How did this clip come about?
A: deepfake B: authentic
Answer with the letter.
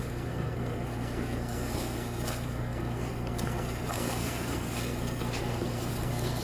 A